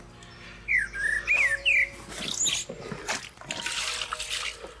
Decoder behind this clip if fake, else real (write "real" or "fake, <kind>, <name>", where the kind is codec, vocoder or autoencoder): real